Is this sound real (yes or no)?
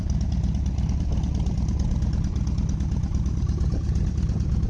yes